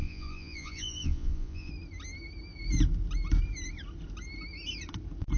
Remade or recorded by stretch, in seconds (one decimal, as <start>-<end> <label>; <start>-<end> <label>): 0.0-1.7 remade; 1.7-5.4 recorded